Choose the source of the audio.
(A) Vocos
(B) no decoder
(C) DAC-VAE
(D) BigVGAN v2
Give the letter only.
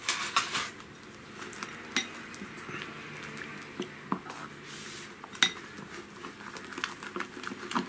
B